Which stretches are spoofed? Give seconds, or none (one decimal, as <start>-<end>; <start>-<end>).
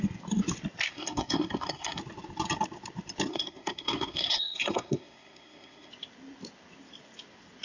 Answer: 0.9-2.0; 3.3-5.9